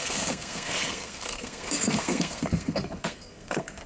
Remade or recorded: remade